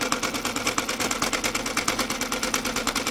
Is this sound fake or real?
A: real